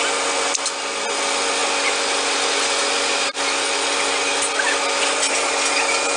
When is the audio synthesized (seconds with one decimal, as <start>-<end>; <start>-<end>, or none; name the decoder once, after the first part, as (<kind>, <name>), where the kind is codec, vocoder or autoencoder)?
none